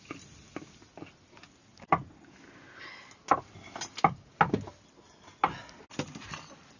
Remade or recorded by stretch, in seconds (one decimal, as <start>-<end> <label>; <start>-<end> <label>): 0.0-6.8 recorded